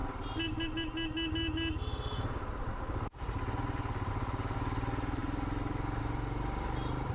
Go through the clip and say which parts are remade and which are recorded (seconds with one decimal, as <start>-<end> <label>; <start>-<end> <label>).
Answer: 0.0-7.1 recorded

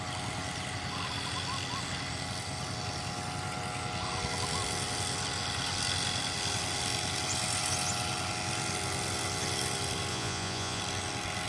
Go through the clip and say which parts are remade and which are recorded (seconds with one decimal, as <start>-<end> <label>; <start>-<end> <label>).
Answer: 0.0-10.1 recorded; 10.1-10.8 remade; 10.8-11.5 recorded